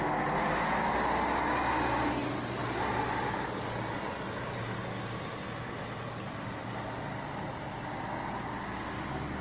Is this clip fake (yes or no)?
no